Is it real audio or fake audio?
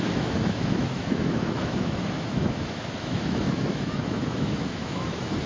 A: fake